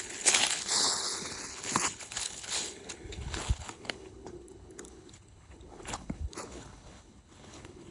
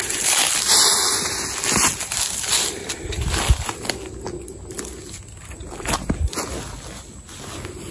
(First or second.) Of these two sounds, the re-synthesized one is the first